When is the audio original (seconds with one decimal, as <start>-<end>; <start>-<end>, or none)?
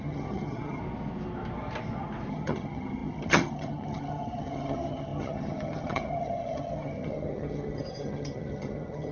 0.8-2.3